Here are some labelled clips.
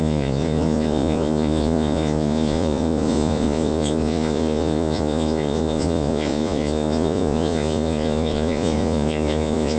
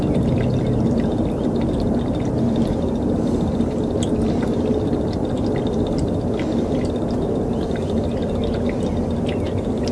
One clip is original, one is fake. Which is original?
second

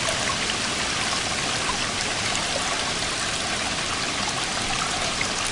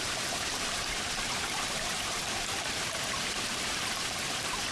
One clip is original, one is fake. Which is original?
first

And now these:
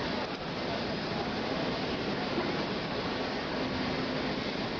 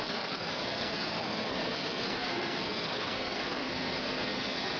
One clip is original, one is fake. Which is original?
first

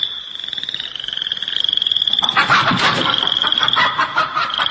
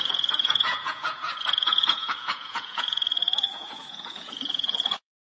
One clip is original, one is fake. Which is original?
first